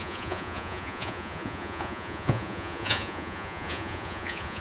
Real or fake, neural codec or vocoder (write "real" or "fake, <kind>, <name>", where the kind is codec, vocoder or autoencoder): fake, vocoder, Vocos